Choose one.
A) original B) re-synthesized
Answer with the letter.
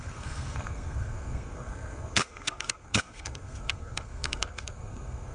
B